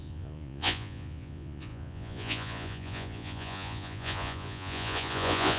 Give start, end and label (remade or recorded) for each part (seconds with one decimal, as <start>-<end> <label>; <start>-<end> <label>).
0.0-5.6 remade